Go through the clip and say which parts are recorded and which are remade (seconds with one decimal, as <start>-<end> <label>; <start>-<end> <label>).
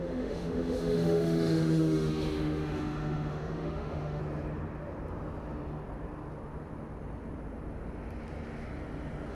0.0-4.2 remade; 4.2-9.3 recorded